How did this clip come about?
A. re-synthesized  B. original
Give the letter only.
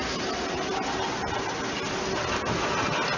B